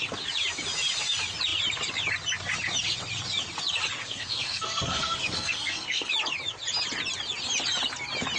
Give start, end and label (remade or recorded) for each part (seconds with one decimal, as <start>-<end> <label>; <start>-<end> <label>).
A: 0.0-4.0 recorded; 4.0-6.1 remade; 6.1-8.4 recorded